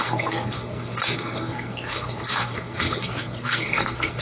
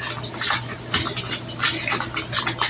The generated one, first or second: first